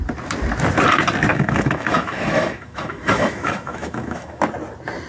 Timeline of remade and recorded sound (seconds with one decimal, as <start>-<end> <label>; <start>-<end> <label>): 0.0-1.3 recorded; 1.3-4.4 remade; 4.4-5.1 recorded